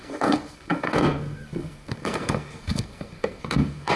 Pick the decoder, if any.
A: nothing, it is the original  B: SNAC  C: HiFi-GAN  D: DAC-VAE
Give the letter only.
B